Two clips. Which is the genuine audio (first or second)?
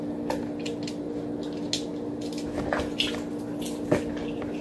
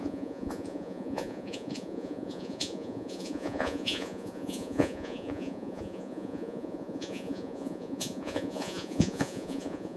first